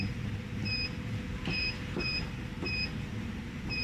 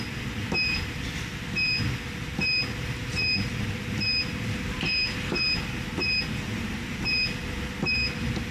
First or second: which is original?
second